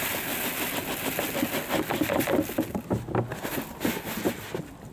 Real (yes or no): yes